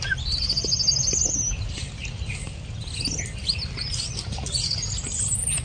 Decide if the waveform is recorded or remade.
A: recorded